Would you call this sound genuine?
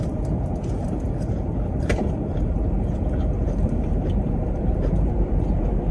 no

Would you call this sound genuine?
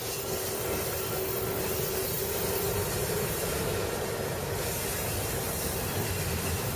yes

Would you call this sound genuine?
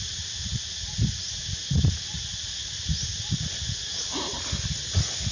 yes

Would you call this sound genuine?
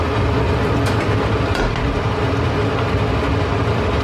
yes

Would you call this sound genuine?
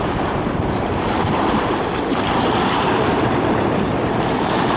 no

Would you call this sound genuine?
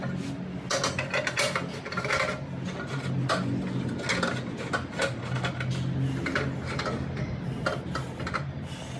yes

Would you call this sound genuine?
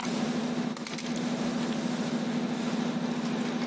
yes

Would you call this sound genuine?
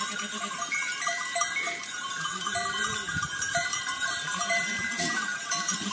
no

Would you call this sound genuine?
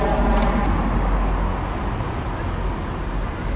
yes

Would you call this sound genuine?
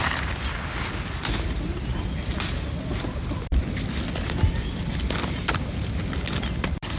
yes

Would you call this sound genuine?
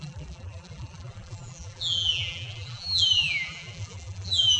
no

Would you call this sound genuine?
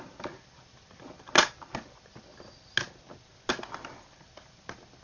yes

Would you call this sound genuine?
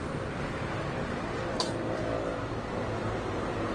no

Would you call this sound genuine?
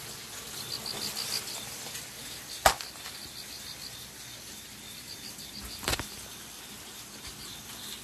yes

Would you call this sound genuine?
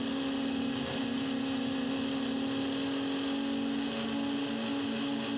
yes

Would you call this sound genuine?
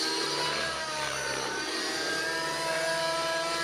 no